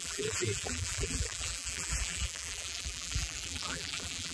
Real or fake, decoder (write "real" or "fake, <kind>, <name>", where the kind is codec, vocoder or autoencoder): fake, vocoder, BigVGAN v2